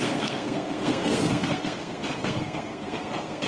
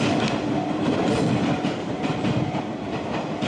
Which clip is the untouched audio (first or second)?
second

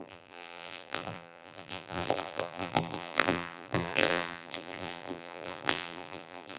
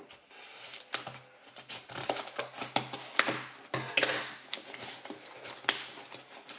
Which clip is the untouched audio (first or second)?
second